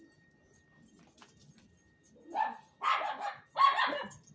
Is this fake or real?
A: real